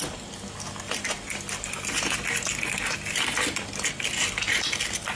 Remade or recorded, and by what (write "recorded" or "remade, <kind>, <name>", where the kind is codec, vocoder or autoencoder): recorded